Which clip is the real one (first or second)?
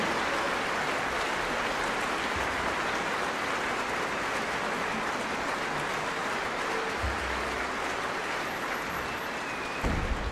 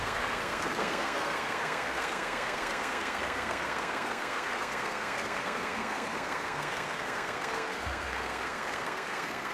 first